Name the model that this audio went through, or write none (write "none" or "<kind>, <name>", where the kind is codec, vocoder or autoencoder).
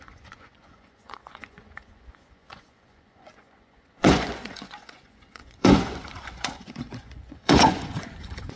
vocoder, Vocos